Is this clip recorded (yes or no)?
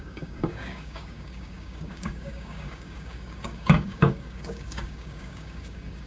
no